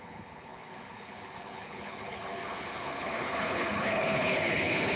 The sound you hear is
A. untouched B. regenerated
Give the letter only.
B